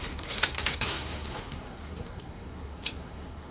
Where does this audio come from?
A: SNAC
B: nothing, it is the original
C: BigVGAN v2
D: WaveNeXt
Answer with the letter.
A